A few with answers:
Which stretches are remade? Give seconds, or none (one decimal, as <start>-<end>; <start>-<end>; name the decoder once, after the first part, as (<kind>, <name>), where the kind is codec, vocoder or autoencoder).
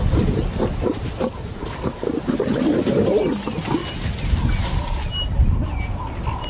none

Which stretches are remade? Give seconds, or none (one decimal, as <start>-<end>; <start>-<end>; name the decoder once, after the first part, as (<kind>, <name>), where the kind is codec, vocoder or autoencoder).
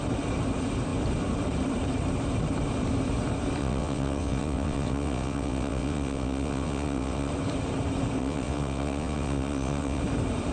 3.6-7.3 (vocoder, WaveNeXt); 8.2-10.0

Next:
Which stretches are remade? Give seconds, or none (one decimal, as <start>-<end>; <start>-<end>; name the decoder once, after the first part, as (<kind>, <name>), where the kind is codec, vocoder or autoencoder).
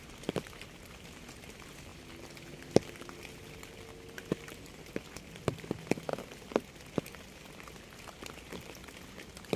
none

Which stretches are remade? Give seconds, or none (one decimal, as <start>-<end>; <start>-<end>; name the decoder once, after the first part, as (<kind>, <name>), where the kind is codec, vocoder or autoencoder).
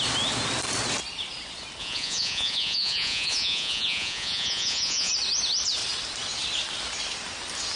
1.8-5.1 (vocoder, Vocos)